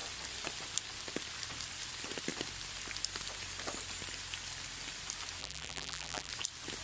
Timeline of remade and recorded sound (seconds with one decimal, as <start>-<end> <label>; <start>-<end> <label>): 0.0-5.4 recorded; 5.4-6.3 remade; 6.3-6.8 recorded